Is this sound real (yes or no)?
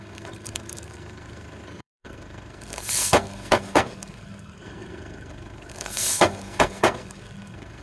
no